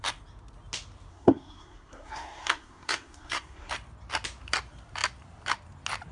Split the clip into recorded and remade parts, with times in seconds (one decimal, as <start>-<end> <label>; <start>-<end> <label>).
0.0-1.1 recorded; 1.1-3.7 remade; 3.7-6.1 recorded